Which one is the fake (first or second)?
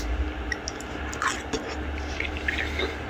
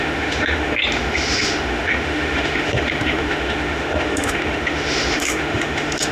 second